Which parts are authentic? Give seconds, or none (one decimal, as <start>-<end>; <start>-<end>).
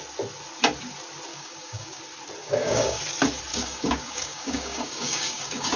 0.0-1.3; 2.0-2.4; 3.0-3.5